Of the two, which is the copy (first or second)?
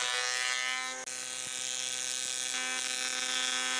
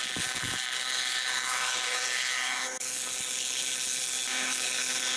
second